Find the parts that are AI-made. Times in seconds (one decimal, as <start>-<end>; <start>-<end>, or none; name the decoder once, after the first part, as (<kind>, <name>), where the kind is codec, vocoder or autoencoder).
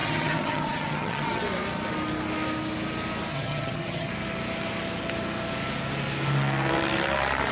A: 0.0-1.4 (vocoder, HiFi-GAN); 3.3-4.1